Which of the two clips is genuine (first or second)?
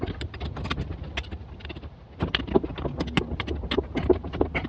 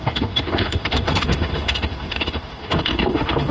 first